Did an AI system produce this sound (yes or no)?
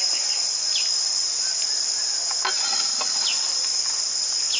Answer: no